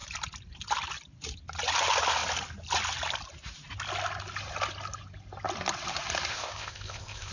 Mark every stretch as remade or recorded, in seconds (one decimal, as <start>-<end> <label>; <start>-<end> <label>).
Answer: 0.0-6.3 recorded; 6.3-7.3 remade